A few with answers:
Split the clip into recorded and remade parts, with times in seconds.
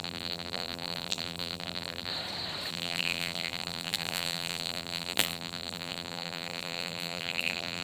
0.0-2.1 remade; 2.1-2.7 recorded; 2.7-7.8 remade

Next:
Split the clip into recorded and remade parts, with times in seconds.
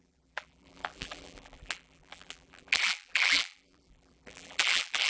0.0-5.1 remade